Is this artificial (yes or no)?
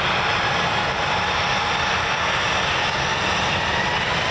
no